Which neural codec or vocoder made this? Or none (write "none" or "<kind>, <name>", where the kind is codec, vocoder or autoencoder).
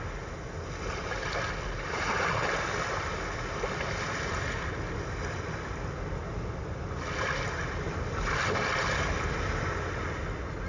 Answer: none